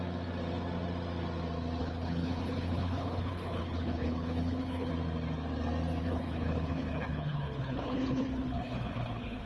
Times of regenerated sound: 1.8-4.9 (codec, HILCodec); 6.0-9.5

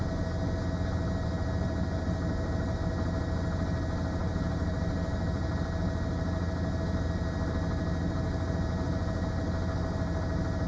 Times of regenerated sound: 4.2-4.8 (vocoder, BigVGAN v2)

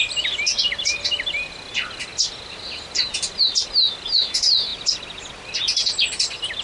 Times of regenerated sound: none

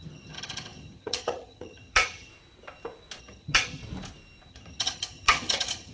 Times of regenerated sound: 0.0-2.3 (vocoder, HiFi-GAN); 3.2-3.8; 4.5-5.9

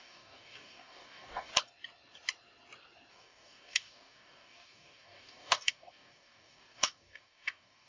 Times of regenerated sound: 0.0-1.5 (codec, DAC); 3.1-7.9

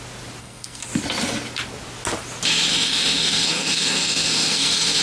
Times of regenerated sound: 0.4-0.9 (codec, SNAC); 2.7-5.0

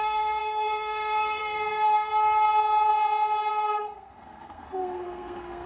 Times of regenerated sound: 0.0-2.1 (codec, SNAC); 3.5-5.7